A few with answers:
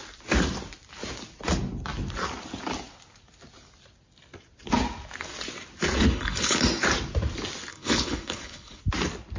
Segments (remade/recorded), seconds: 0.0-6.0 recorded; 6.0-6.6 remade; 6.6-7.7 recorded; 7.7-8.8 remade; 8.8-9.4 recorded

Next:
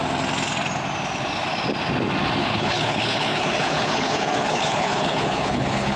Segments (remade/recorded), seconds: 0.0-2.4 recorded; 2.4-6.0 remade

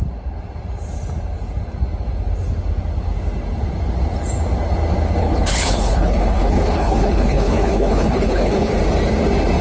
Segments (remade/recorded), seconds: 0.0-5.2 recorded; 5.2-8.7 remade; 8.7-9.6 recorded

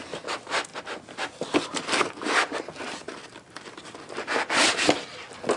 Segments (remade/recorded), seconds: 0.0-5.6 recorded